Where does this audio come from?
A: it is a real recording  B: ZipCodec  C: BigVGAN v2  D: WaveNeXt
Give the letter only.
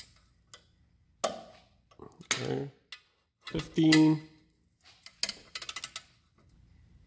A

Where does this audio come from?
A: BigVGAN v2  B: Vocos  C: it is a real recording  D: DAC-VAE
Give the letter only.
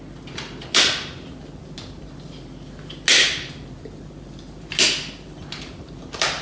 C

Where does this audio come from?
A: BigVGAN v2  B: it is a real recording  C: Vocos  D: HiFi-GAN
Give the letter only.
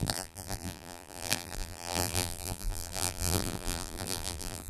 A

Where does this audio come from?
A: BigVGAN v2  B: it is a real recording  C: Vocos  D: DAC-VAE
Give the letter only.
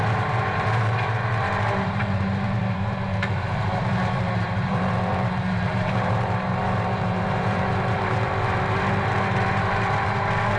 A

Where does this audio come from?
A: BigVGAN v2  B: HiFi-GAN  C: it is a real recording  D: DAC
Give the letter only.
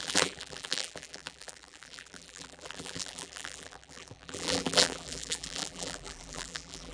A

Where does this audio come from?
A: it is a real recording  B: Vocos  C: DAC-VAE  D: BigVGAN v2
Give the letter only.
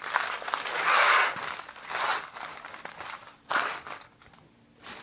D